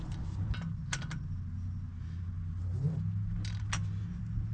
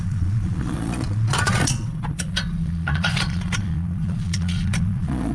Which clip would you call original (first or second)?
first